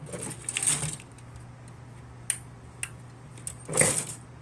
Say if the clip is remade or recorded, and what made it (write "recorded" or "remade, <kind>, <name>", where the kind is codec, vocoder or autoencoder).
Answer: recorded